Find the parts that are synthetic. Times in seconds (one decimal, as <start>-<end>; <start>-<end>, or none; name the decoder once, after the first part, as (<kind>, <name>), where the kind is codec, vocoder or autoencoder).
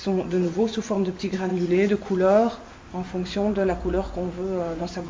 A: 0.0-1.5 (vocoder, Vocos); 2.9-5.1